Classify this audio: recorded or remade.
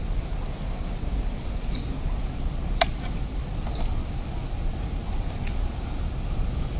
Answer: recorded